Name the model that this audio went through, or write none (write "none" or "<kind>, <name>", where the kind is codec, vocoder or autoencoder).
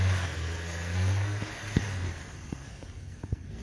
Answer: codec, SNAC